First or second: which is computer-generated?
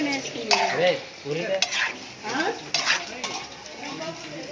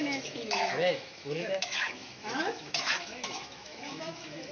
second